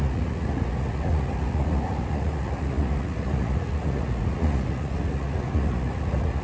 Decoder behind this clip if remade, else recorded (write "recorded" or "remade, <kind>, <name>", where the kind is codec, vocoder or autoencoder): remade, vocoder, Vocos